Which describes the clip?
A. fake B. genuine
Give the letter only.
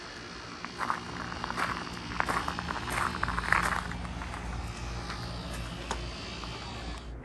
B